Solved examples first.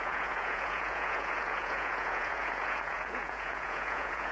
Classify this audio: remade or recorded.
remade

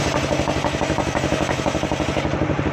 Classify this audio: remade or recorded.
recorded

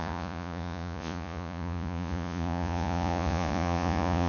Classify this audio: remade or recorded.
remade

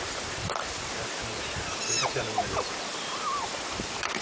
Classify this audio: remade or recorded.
remade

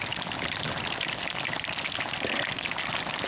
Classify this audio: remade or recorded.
recorded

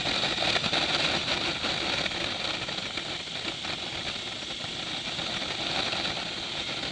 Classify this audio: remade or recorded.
recorded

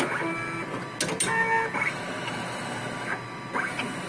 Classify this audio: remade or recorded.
recorded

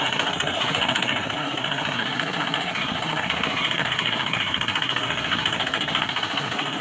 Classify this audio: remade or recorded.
remade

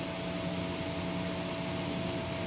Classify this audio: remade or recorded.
recorded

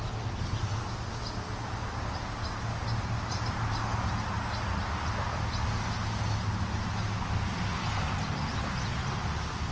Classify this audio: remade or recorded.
recorded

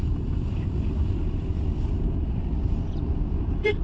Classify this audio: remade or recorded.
remade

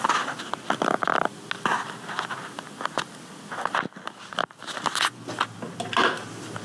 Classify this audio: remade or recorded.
recorded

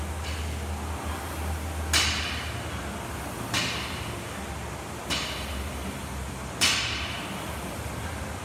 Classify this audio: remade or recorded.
recorded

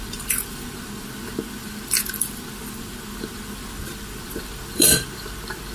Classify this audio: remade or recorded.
remade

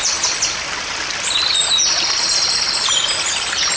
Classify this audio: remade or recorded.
recorded